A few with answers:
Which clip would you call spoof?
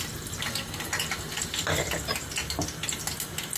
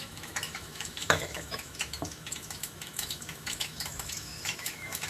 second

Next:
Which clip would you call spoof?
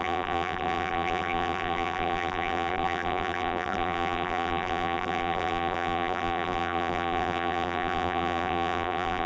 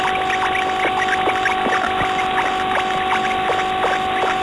first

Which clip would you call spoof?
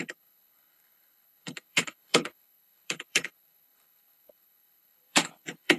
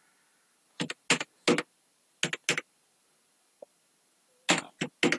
first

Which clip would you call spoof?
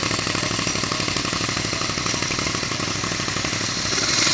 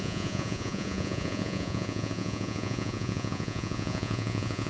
second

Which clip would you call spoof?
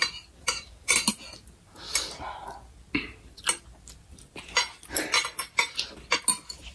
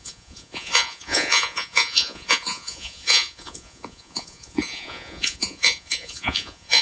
second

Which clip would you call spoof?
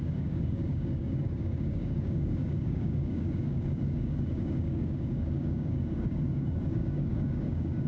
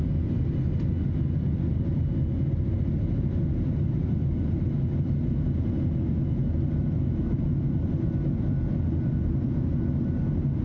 first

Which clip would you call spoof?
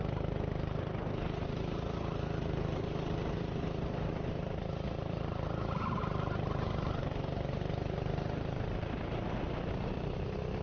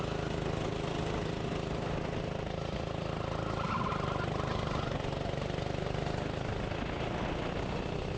first